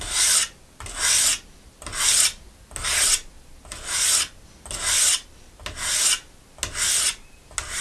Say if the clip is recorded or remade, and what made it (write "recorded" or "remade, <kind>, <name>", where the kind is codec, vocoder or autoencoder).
recorded